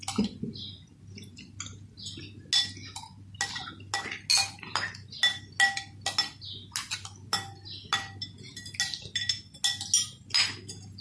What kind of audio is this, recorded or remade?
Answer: recorded